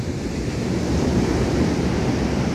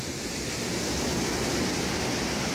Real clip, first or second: second